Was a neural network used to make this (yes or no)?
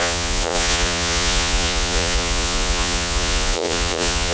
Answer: yes